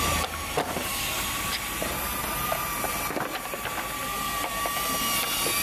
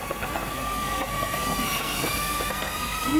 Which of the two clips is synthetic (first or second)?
second